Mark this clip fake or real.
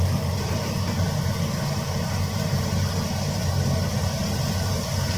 real